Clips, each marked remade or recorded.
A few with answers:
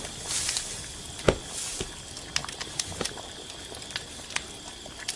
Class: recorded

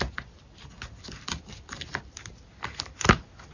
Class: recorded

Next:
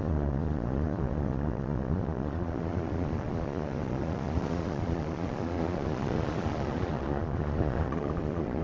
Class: remade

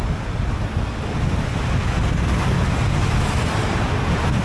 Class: recorded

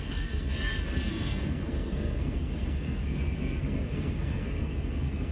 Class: remade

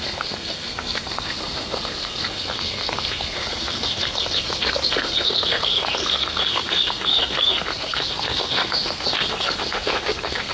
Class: remade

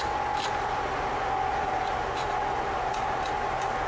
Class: recorded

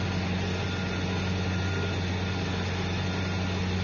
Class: recorded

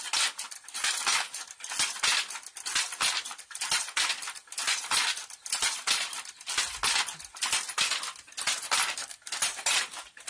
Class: recorded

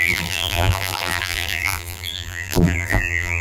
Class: remade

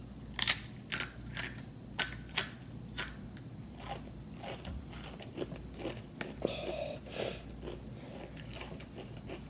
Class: recorded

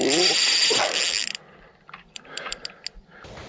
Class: recorded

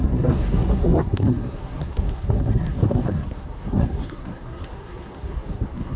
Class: remade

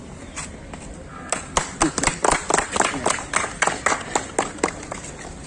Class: recorded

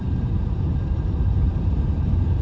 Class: remade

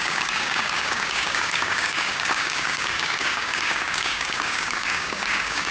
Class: remade